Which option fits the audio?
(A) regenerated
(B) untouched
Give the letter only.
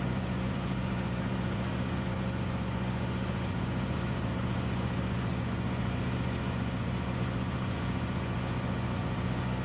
A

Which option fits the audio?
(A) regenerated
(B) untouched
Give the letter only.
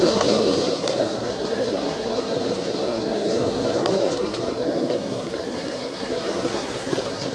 A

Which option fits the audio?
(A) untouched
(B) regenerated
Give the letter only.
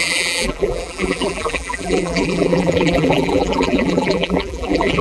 B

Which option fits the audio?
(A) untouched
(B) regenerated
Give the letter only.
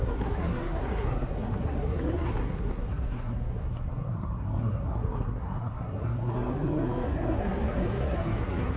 B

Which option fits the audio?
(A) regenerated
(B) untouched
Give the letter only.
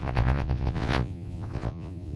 A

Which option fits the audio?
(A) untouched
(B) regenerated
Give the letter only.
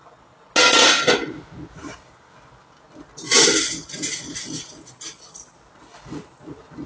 A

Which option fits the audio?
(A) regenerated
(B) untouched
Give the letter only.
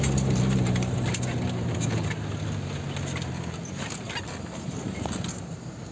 B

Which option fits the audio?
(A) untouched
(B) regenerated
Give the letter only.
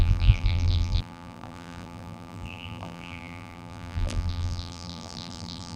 B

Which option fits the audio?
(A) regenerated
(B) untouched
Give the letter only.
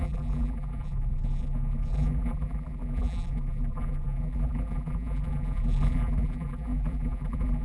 A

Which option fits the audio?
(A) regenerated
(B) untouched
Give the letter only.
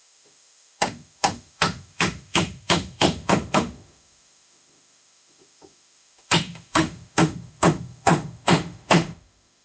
A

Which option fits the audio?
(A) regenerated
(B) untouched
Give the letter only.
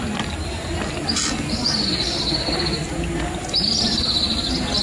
B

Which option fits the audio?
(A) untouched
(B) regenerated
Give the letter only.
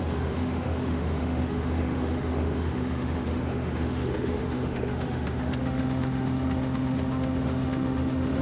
B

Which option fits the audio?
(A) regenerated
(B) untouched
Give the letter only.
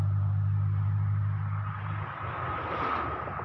B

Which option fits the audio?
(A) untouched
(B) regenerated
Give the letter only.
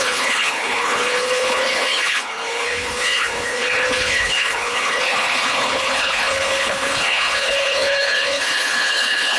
B